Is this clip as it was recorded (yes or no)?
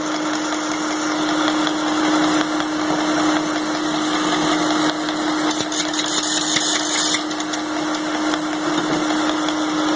yes